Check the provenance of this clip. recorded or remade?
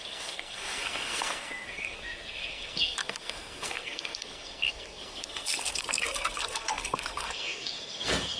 remade